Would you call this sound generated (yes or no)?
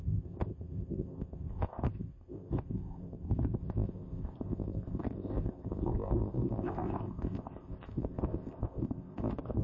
yes